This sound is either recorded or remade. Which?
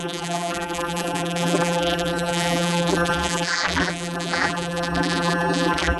remade